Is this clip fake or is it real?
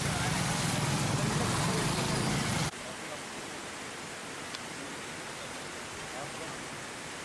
real